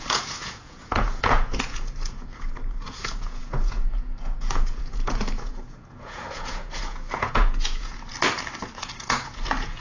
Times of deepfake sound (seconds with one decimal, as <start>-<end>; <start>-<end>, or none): 0.0-8.1; 8.8-9.8